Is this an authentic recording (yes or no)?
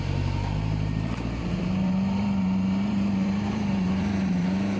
no